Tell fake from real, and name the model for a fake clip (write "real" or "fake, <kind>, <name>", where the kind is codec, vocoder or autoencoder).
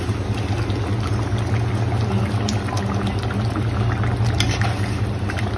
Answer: real